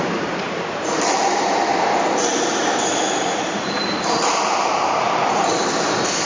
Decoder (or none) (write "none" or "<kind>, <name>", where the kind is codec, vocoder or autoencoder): vocoder, BigVGAN v2